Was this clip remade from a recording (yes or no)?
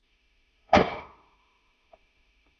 yes